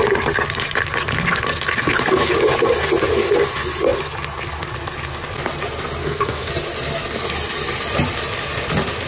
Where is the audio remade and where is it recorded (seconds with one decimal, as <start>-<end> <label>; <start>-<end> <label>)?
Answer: 0.0-6.0 recorded; 6.0-6.5 remade; 6.5-9.1 recorded